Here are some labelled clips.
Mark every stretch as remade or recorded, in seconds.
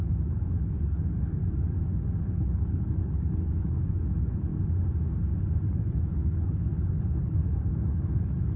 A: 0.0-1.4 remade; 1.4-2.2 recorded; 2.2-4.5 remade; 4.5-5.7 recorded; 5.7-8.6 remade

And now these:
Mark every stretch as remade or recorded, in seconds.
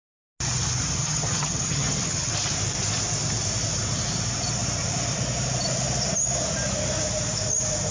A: 0.0-1.0 recorded; 1.0-2.3 remade; 2.3-7.9 recorded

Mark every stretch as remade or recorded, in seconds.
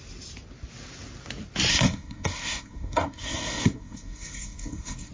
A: 0.0-1.7 recorded; 1.7-5.1 remade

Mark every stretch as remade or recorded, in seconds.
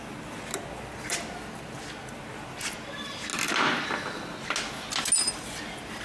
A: 0.0-6.0 recorded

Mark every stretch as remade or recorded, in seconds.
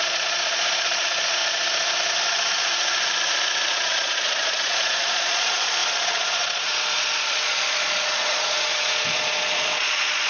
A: 0.0-1.4 remade; 1.4-3.7 recorded; 3.7-10.3 remade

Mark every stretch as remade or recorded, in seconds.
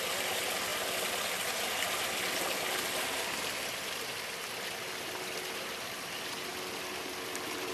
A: 0.0-7.7 recorded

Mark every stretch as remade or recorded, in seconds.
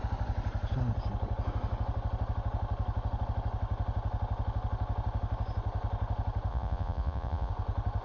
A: 0.0-6.5 recorded; 6.5-7.5 remade; 7.5-8.0 recorded